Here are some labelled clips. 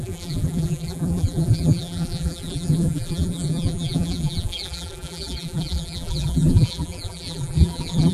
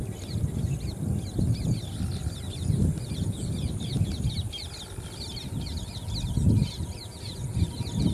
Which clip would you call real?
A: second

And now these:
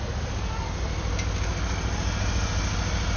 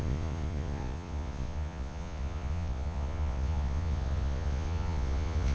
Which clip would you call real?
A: first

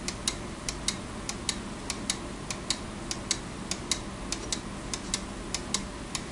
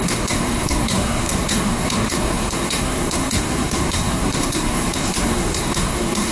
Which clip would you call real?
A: first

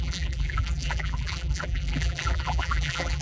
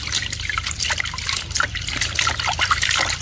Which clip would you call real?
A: second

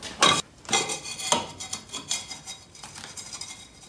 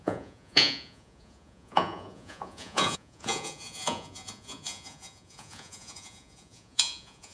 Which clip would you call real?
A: first